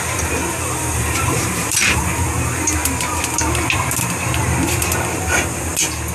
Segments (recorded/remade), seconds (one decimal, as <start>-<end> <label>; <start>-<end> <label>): 0.0-0.8 recorded; 0.8-2.0 remade; 2.0-6.1 recorded

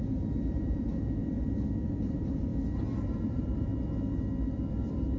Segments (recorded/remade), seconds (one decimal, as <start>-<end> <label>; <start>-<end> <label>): 0.0-1.2 remade; 1.2-1.9 recorded; 1.9-2.5 remade; 2.5-3.0 recorded; 3.0-3.7 remade; 3.7-4.8 recorded; 4.8-5.2 remade

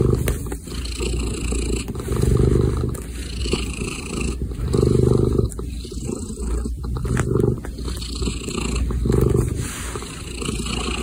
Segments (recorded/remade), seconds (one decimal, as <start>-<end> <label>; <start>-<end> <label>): 0.0-3.4 recorded; 3.4-7.1 remade; 7.1-11.0 recorded

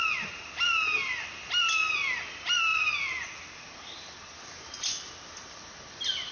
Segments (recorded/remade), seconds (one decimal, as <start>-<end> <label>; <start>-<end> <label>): 0.0-2.7 recorded; 2.7-4.4 remade; 4.4-6.3 recorded

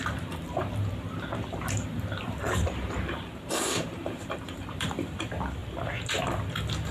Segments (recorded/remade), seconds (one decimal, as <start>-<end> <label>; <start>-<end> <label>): 0.0-5.6 remade; 5.6-6.9 recorded

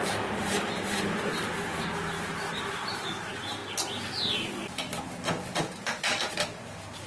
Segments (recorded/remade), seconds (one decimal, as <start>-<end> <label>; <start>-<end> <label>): 0.0-1.3 remade; 1.3-2.2 recorded; 2.2-3.6 remade; 3.6-7.1 recorded

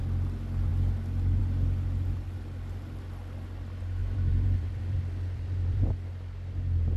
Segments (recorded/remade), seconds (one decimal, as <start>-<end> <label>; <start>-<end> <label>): 0.0-4.0 recorded; 4.0-5.9 remade; 5.9-7.0 recorded